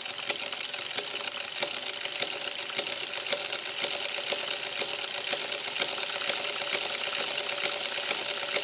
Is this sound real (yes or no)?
yes